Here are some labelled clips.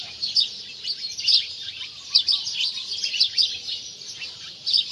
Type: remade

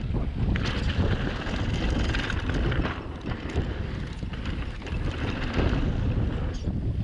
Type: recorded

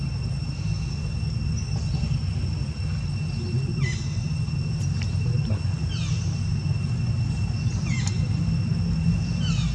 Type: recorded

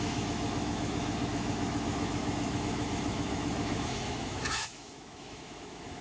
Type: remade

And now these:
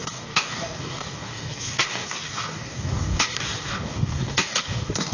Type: remade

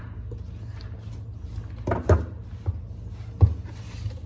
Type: recorded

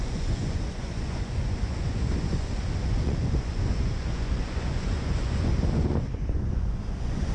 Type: remade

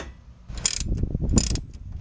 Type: recorded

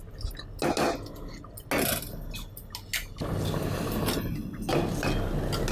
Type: recorded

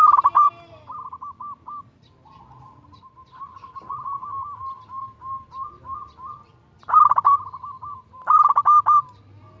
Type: remade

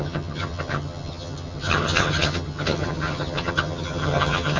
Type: remade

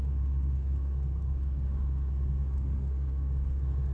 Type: remade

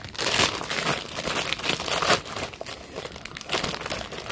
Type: recorded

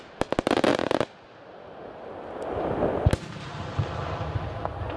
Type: recorded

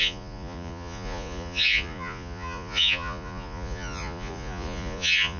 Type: remade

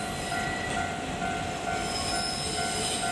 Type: recorded